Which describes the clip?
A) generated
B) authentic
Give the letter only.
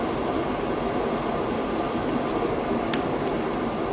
B